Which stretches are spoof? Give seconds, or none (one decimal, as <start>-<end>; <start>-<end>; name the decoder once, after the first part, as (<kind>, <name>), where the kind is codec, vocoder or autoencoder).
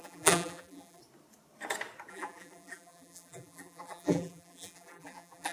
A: 0.0-1.0 (vocoder, BigVGAN v2); 2.1-5.5